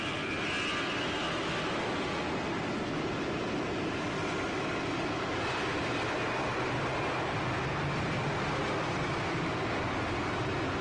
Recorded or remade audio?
recorded